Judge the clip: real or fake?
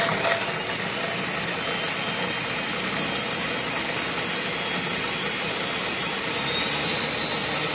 real